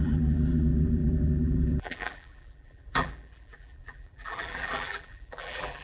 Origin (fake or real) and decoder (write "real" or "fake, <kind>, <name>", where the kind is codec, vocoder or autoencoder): fake, vocoder, BigVGAN v2